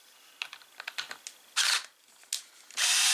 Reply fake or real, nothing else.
real